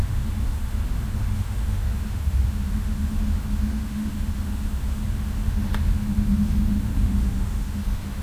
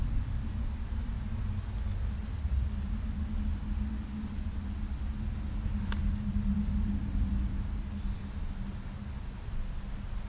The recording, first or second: second